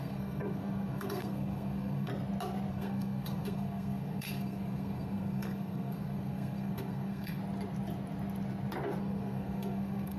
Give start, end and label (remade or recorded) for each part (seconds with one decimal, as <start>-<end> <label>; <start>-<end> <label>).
0.0-2.1 remade; 2.1-2.7 recorded; 2.7-7.4 remade; 7.4-9.0 recorded; 9.0-10.2 remade